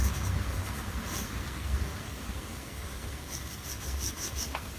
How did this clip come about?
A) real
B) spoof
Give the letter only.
B